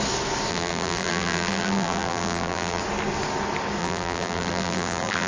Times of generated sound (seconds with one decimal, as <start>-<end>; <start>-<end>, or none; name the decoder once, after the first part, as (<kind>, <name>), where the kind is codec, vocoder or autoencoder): 0.5-2.8 (vocoder, BigVGAN v2); 3.8-5.3